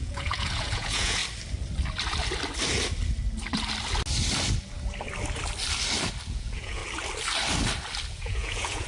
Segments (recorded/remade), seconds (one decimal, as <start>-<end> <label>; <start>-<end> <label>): 0.0-1.2 remade; 1.2-6.3 recorded; 6.3-6.8 remade; 6.8-8.1 recorded; 8.1-8.9 remade